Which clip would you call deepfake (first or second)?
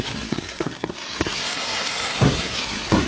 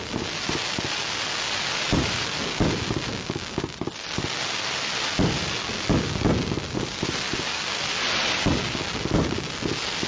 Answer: first